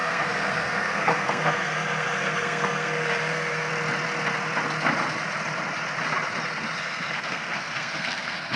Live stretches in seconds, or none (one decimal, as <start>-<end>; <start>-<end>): 3.7-6.8